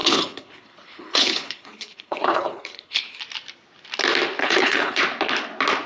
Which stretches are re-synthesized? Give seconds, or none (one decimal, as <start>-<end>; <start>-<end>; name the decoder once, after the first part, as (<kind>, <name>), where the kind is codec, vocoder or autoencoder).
0.0-3.2 (codec, HILCodec); 4.4-5.0